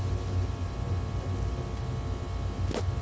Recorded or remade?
recorded